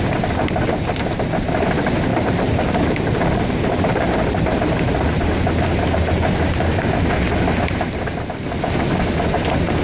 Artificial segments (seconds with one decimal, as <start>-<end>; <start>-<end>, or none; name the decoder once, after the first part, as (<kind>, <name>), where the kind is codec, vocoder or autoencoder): 2.1-6.8 (vocoder, BigVGAN v2)